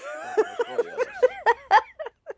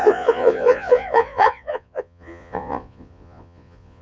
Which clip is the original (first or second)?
first